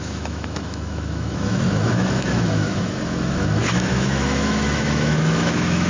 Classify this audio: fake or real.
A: fake